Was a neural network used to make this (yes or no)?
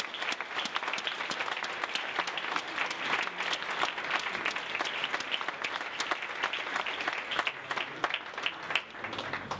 no